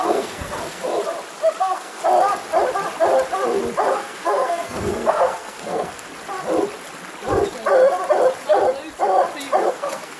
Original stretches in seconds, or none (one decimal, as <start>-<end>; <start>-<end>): 0.9-1.6; 2.0-3.9; 6.1-9.7